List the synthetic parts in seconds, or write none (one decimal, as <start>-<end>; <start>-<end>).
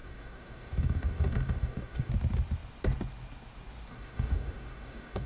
0.0-2.1; 3.9-5.3